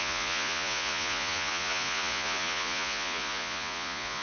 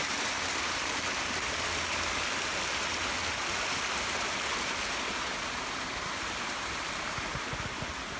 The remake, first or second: first